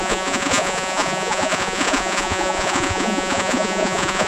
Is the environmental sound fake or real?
fake